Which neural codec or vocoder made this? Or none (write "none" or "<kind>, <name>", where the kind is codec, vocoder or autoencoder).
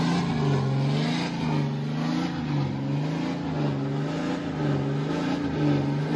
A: none